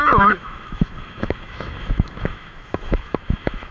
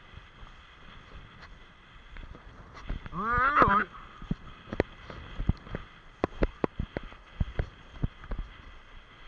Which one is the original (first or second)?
second